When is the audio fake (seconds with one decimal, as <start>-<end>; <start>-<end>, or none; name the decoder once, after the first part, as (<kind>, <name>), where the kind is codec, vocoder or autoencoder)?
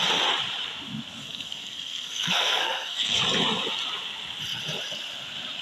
1.2-3.2 (codec, SNAC)